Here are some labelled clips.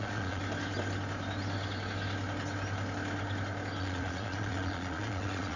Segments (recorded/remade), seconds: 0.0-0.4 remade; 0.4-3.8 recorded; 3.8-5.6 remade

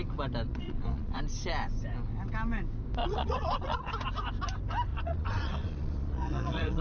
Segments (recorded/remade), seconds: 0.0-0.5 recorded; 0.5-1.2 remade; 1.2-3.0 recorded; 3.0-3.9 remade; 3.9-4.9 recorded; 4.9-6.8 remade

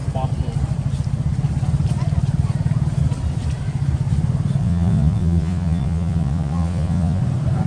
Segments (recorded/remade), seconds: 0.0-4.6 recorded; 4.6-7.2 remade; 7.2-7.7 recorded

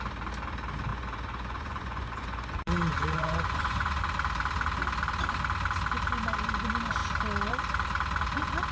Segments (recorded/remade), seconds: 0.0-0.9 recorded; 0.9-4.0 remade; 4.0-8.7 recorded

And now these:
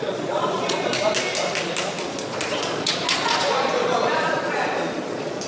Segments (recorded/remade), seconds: 0.0-0.9 remade; 0.9-2.1 recorded; 2.1-5.5 remade

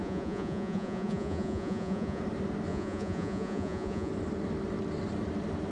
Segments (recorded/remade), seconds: 0.0-2.2 remade; 2.2-2.7 recorded; 2.7-4.1 remade; 4.1-5.7 recorded

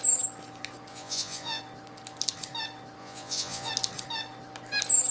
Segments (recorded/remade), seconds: 0.0-0.9 recorded; 0.9-1.6 remade; 1.6-3.0 recorded; 3.0-3.7 remade; 3.7-5.1 recorded

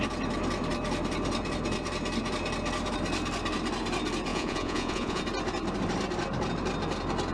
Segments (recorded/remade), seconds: 0.0-4.3 recorded; 4.3-5.2 remade; 5.2-7.3 recorded